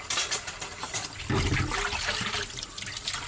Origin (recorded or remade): recorded